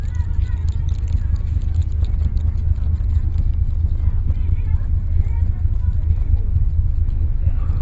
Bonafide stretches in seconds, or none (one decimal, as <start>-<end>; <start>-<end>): 0.0-0.6; 1.3-7.8